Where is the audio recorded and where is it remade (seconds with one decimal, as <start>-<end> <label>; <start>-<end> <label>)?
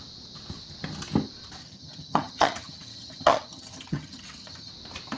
0.0-1.6 recorded; 1.6-4.7 remade; 4.7-5.2 recorded